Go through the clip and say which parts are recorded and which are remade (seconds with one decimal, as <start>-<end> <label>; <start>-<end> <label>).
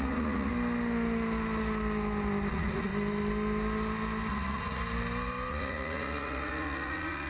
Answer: 0.0-0.5 remade; 0.5-2.5 recorded; 2.5-2.9 remade; 2.9-4.3 recorded; 4.3-4.8 remade; 4.8-5.5 recorded; 5.5-7.3 remade